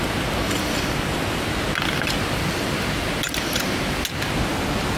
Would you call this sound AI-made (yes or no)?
no